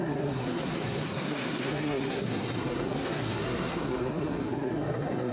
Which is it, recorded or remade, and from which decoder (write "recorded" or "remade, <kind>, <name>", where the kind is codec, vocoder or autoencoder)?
remade, codec, SNAC